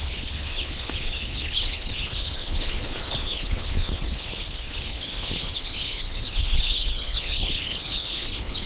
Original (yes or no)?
no